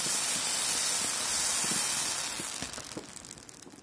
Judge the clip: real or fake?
real